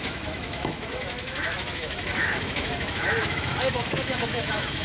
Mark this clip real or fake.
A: fake